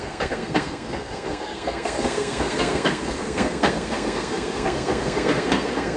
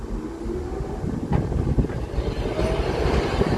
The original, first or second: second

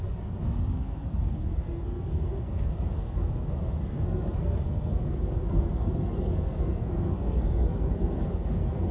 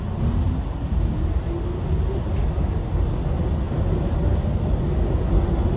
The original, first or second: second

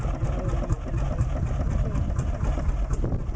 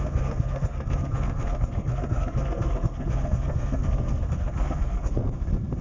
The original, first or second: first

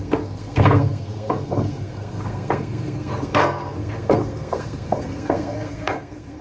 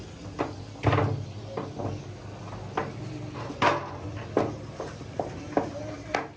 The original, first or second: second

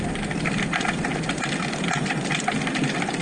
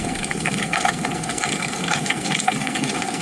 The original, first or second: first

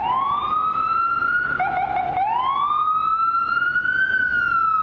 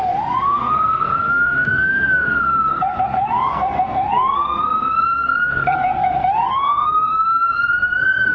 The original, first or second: first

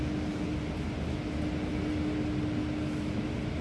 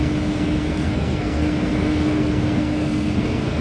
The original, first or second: first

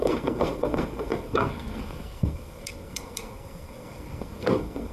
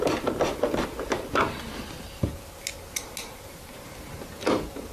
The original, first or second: second